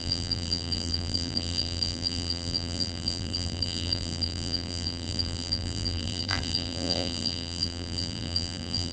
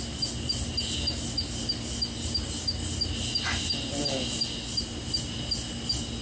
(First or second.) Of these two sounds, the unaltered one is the second